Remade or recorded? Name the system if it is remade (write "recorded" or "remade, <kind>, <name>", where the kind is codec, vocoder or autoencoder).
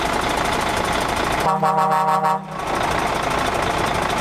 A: recorded